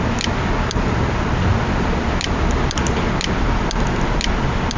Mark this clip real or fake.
real